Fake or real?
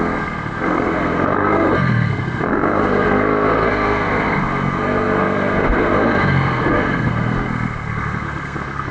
fake